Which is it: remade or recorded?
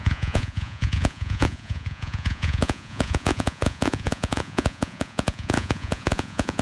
remade